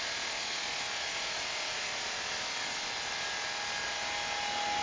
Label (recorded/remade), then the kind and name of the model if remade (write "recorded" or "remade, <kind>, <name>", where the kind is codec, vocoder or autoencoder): recorded